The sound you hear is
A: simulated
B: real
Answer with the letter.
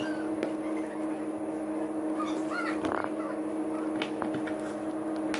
B